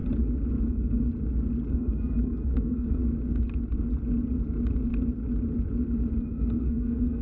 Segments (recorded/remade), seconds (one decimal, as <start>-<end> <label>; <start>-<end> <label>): 0.0-0.6 recorded; 0.6-1.1 remade; 1.1-1.7 recorded; 1.7-3.0 remade; 3.0-6.2 recorded; 6.2-7.2 remade